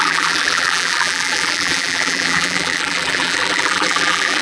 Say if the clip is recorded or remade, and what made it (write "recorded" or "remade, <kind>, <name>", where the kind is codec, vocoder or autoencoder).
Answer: remade, vocoder, BigVGAN v2